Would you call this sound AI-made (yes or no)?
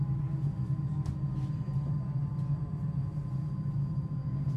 no